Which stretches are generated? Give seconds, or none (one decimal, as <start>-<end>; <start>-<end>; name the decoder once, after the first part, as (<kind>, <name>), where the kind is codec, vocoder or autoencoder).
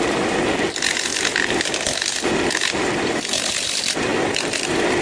1.1-3.5 (vocoder, BigVGAN v2)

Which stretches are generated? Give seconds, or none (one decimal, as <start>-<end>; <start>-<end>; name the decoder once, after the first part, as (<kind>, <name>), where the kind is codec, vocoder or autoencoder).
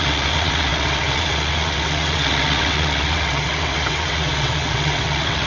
0.0-5.5 (vocoder, WaveNeXt)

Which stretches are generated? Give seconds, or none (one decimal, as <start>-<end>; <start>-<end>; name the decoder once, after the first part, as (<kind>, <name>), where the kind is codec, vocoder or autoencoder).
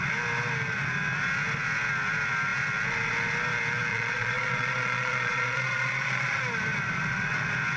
3.9-6.4 (vocoder, Vocos)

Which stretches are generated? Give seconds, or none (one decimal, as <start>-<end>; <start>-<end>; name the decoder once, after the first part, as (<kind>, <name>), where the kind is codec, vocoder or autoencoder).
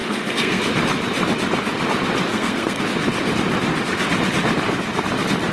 0.0-0.6 (codec, SNAC); 2.3-2.8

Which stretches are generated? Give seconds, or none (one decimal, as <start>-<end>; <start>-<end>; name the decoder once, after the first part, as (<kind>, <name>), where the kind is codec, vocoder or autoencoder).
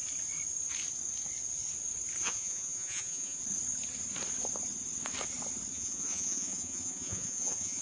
2.2-3.4 (vocoder, Vocos); 5.7-7.8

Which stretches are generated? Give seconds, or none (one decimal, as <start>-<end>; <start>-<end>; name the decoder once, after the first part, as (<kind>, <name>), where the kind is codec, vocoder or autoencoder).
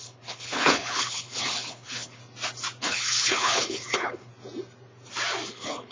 0.0-2.2 (codec, HILCodec); 2.8-4.3; 5.5-5.9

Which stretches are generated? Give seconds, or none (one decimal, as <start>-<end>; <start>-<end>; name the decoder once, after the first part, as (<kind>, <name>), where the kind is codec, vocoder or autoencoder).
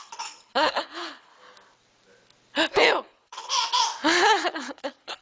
0.0-1.3 (codec, HILCodec); 2.7-3.5; 4.2-5.2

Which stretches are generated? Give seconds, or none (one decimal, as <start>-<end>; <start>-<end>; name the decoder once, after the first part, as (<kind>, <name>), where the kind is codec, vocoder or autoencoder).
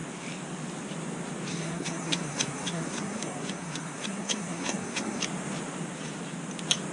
1.5-5.2 (codec, SNAC)